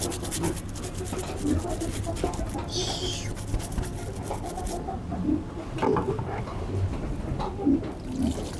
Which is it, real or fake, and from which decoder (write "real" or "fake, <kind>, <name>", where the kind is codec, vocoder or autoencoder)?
real